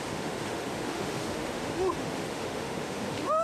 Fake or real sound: fake